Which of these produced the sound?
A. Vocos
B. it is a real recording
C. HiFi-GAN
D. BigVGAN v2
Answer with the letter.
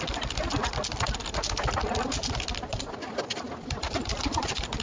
B